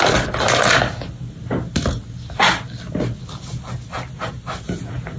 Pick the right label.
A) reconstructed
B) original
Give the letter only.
B